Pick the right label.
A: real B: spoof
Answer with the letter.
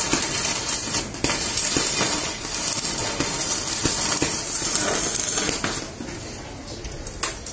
A